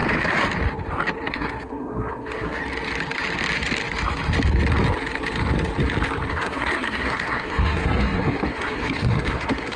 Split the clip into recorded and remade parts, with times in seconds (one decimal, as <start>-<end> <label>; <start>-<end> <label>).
0.0-1.3 recorded; 1.3-2.6 remade; 2.6-6.3 recorded; 6.3-9.8 remade